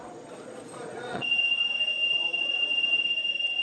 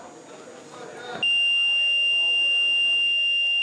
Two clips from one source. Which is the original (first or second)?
second